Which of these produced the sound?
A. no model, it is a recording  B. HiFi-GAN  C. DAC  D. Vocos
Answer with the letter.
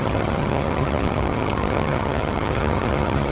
B